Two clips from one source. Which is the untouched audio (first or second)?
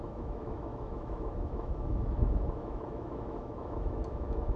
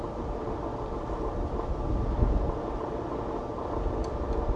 second